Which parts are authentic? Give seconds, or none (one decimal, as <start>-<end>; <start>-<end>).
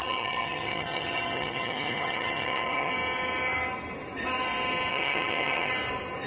2.9-4.9; 5.7-6.3